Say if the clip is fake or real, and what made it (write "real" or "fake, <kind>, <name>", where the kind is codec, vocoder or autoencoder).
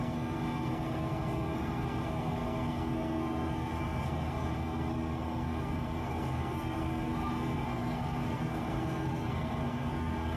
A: fake, codec, SNAC